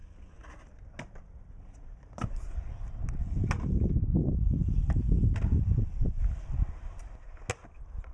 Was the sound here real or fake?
real